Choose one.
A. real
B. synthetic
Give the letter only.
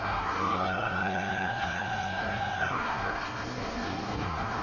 B